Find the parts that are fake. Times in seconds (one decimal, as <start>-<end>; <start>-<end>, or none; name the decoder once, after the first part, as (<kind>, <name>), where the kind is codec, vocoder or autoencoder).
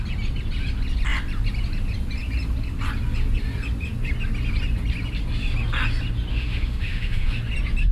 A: 6.3-7.4 (autoencoder, DAC-VAE)